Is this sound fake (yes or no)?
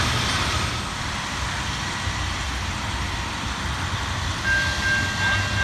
no